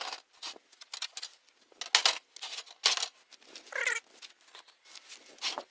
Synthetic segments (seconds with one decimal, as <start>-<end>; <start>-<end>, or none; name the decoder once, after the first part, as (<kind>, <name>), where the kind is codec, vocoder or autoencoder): none